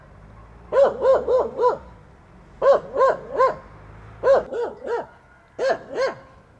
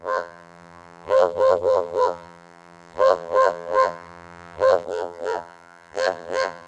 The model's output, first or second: second